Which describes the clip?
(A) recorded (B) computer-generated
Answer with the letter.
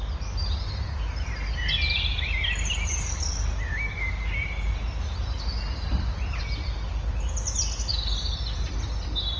A